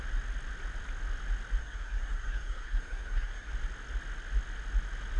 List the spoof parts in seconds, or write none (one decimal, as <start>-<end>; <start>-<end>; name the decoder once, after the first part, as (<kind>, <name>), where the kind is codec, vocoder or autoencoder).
1.6-3.5 (codec, SNAC)